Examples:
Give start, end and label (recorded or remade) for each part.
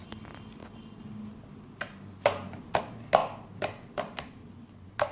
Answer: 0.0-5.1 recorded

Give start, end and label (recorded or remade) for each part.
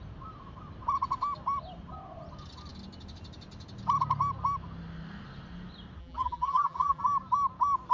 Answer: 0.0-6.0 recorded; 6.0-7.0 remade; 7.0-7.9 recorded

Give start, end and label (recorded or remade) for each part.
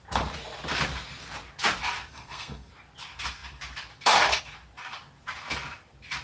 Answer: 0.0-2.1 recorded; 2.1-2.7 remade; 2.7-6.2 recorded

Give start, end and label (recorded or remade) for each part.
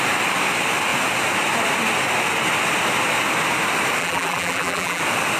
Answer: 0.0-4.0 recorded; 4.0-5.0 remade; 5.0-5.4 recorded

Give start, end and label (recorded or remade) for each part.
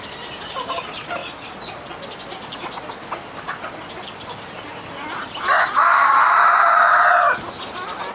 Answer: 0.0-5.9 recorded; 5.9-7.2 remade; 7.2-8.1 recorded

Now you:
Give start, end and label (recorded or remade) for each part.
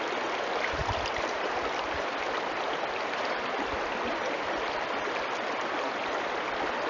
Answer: 0.0-6.9 recorded